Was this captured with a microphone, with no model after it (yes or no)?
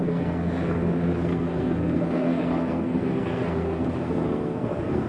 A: no